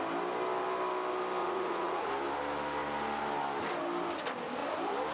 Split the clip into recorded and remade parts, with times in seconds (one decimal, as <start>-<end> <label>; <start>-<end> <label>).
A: 0.0-1.4 recorded; 1.4-2.1 remade; 2.1-5.1 recorded